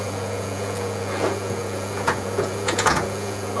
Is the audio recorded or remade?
remade